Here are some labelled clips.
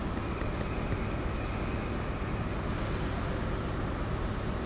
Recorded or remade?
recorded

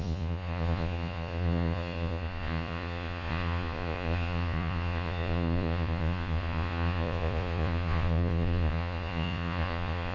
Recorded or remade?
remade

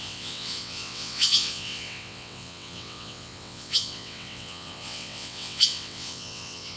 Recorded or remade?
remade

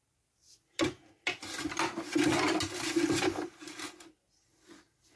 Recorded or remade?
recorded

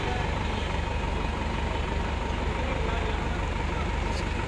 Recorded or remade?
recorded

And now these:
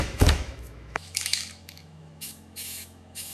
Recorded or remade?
remade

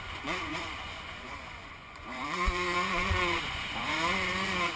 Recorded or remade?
remade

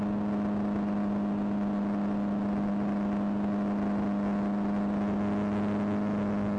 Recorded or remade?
recorded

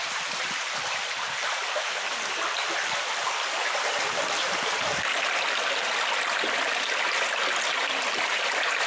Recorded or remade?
recorded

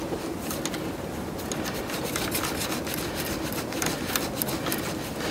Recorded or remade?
recorded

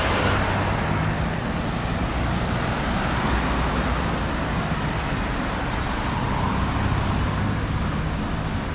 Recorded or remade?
recorded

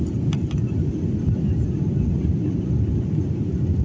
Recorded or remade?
recorded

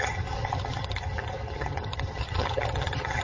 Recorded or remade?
remade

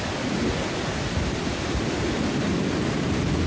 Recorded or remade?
recorded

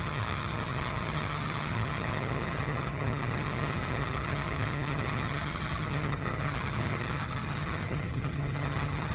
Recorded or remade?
remade